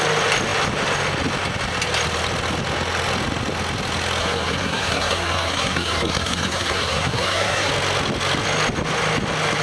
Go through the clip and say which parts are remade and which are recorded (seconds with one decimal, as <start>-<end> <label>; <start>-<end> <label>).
0.0-4.2 recorded; 4.2-7.7 remade; 7.7-9.6 recorded